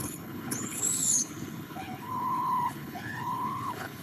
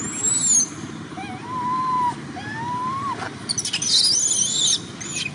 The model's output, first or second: first